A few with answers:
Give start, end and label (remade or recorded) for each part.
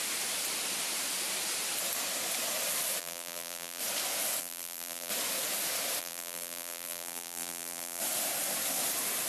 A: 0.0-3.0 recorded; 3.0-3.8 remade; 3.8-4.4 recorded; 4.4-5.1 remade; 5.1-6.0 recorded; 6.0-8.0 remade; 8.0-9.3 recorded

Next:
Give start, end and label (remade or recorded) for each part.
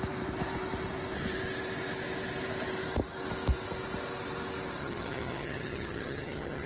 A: 0.0-4.8 recorded; 4.8-6.7 remade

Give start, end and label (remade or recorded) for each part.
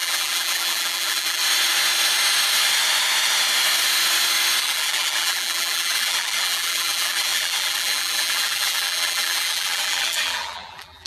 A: 0.0-1.4 remade; 1.4-4.6 recorded; 4.6-11.1 remade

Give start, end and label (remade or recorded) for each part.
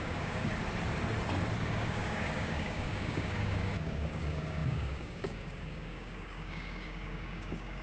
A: 0.0-0.5 remade; 0.5-1.6 recorded; 1.6-7.8 remade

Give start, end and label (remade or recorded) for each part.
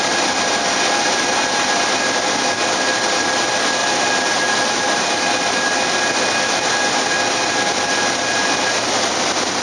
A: 0.0-3.8 recorded; 3.8-5.0 remade; 5.0-9.6 recorded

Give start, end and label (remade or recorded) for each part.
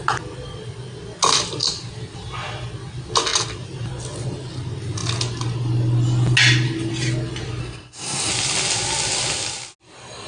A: 0.0-7.6 recorded; 7.6-8.3 remade; 8.3-10.3 recorded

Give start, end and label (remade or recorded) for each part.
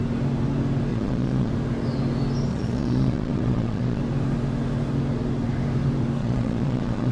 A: 0.0-0.9 recorded; 0.9-1.5 remade; 1.5-2.5 recorded; 2.5-4.0 remade; 4.0-6.2 recorded; 6.2-7.1 remade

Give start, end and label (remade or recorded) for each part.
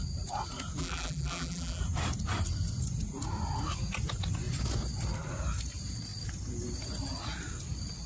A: 0.0-0.8 recorded; 0.8-1.8 remade; 1.8-8.1 recorded